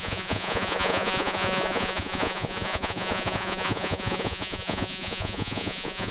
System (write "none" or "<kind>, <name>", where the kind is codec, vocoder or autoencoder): vocoder, Vocos